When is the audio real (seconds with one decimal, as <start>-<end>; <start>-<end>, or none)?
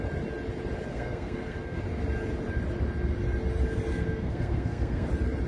0.0-0.9; 1.8-3.9; 5.1-5.5